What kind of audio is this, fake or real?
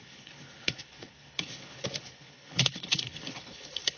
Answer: fake